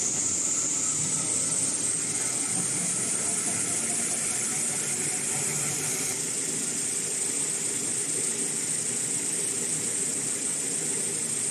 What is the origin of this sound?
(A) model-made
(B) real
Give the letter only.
B